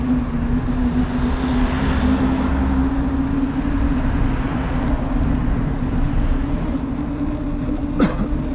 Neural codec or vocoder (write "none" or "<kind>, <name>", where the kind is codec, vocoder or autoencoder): none